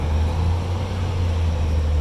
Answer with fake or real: real